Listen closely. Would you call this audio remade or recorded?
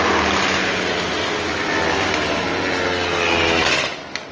recorded